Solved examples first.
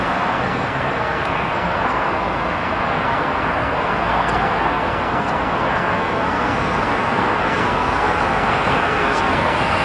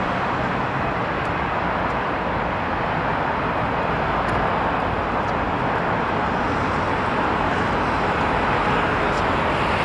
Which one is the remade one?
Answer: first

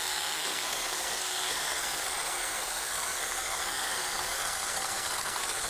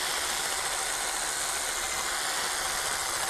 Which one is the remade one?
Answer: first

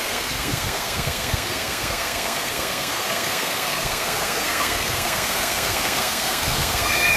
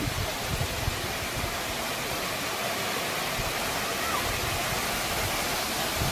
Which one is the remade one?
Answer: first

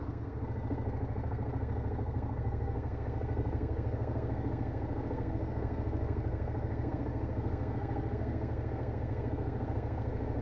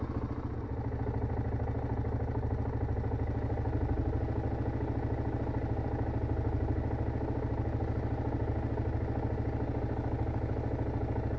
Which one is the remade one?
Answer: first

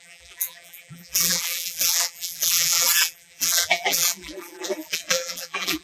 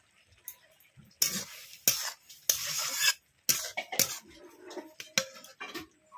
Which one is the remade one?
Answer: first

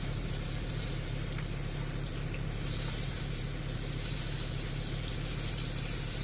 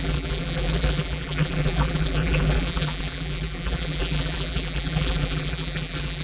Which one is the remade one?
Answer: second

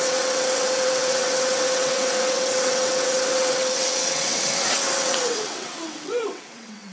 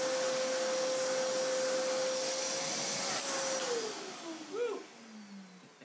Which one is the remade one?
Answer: first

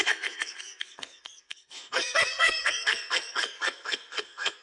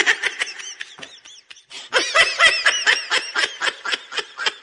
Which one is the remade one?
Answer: first